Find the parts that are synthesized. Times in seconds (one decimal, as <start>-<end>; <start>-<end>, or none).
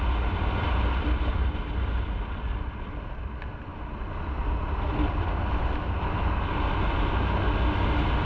none